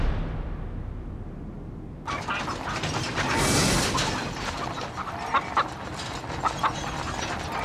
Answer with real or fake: real